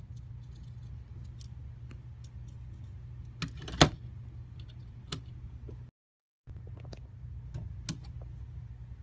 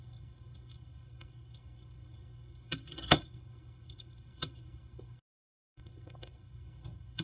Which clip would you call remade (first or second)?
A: second